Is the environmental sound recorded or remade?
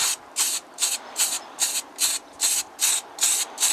recorded